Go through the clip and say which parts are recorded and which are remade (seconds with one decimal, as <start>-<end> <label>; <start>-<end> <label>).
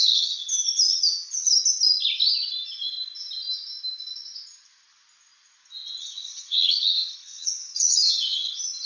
0.0-1.5 remade; 1.5-6.0 recorded; 6.0-8.9 remade